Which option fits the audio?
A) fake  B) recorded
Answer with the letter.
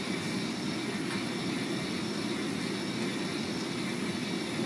B